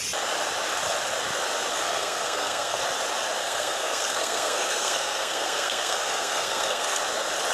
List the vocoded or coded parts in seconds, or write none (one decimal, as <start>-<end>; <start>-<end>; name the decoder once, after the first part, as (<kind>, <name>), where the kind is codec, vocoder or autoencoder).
1.7-2.8 (codec, SNAC); 3.4-7.0